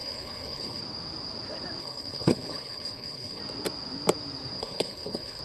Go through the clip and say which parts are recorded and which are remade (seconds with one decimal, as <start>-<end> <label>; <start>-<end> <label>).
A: 0.0-0.8 remade; 0.8-1.8 recorded; 1.8-3.4 remade; 3.4-4.6 recorded; 4.6-5.4 remade